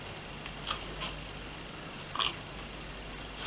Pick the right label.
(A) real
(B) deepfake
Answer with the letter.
A